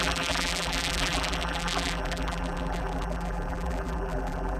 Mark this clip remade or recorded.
remade